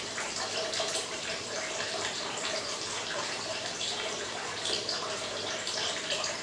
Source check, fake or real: fake